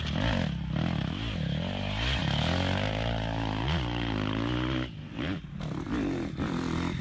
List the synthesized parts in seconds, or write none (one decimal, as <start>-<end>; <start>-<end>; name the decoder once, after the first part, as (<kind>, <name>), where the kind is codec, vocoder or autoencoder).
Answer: none